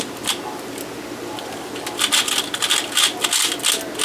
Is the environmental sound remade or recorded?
recorded